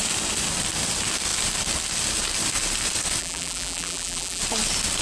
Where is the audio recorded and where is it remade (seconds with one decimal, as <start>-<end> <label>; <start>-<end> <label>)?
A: 0.0-3.2 recorded; 3.2-4.4 remade; 4.4-5.0 recorded